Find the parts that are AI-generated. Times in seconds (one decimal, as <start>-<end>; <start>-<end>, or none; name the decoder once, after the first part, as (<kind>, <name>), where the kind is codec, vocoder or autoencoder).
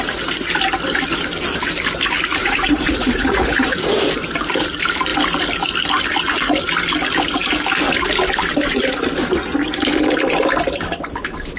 2.4-3.9 (vocoder, Vocos)